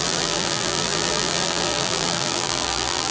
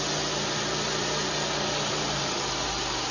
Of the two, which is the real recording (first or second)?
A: second